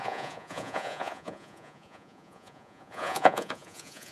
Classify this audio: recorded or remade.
remade